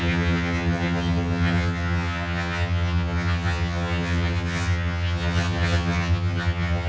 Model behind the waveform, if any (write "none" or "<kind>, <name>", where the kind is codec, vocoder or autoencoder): vocoder, HiFi-GAN